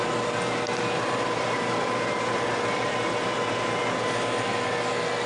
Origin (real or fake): real